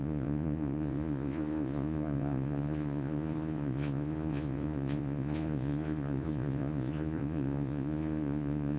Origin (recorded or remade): remade